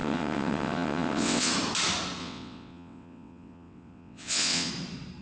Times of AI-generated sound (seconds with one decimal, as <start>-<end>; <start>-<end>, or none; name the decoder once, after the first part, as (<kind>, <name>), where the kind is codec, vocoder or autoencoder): 0.0-1.5 (vocoder, WaveNeXt); 2.2-4.7